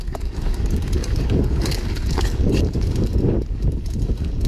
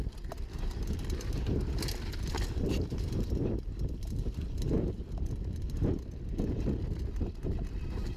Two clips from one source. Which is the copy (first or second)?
first